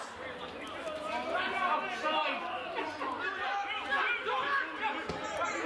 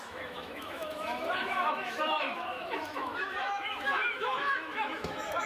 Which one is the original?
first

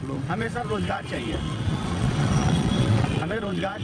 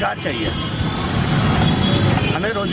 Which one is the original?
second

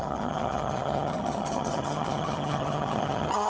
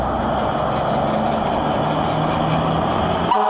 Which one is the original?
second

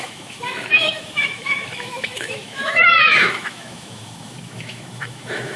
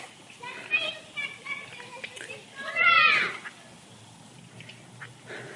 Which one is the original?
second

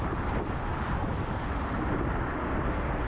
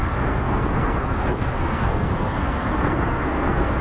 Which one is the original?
first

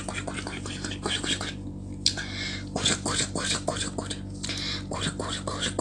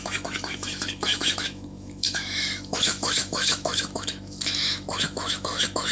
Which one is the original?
first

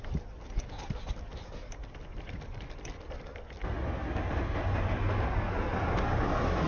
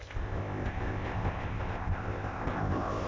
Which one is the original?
first